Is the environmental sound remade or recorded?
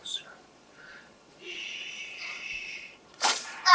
remade